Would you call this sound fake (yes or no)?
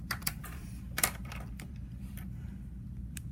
yes